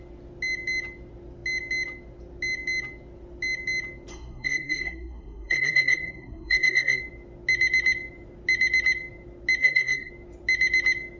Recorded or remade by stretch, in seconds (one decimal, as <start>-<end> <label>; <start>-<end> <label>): 0.0-4.1 recorded; 4.1-7.0 remade; 7.0-9.6 recorded; 9.6-10.1 remade; 10.1-11.2 recorded